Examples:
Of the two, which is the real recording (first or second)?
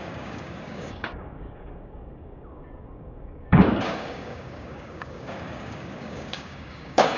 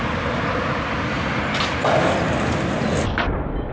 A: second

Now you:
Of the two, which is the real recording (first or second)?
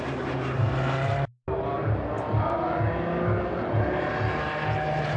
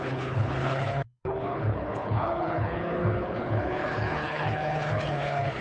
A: first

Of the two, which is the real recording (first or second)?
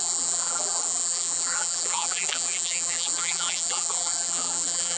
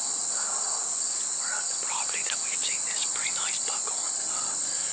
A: second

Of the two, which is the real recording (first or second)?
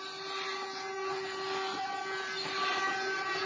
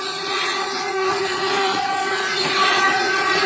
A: first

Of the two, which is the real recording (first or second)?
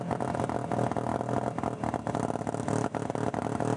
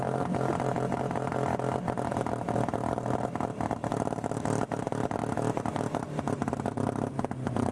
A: first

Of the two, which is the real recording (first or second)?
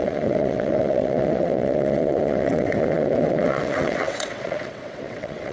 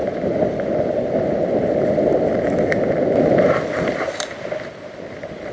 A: second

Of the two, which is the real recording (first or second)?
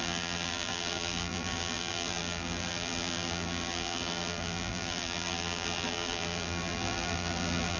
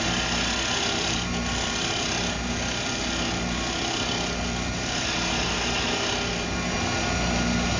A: second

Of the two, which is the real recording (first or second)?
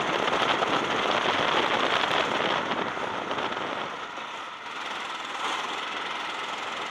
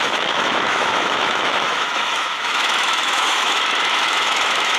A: first